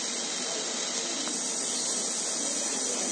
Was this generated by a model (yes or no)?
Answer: no